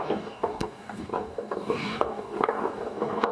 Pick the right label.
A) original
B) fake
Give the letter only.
B